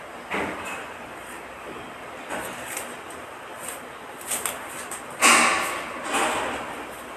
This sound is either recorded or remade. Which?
recorded